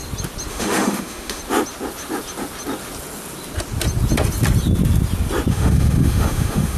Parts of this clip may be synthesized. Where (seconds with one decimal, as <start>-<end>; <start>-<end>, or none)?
0.5-1.4; 5.5-6.8